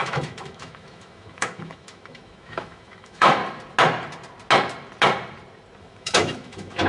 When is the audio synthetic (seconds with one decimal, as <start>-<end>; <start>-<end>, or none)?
0.0-3.4; 5.8-6.9